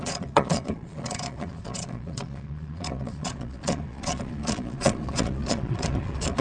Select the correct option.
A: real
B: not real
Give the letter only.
B